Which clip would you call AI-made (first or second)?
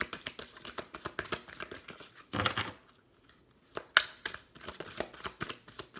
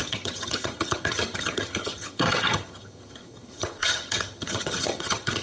second